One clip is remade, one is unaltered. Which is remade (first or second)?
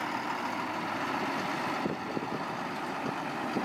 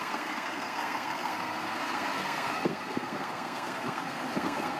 second